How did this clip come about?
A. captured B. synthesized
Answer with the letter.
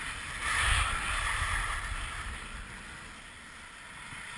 A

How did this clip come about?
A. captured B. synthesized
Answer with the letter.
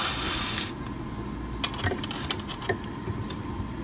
A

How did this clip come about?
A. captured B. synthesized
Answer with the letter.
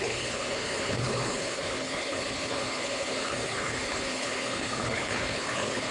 B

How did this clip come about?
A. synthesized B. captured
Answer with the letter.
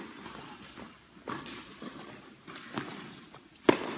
B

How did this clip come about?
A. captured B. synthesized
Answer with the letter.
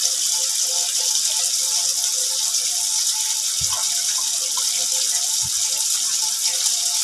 A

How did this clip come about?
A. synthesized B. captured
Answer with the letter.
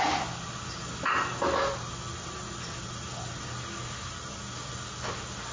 B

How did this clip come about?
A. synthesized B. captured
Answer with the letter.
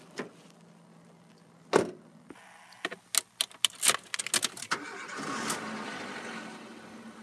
B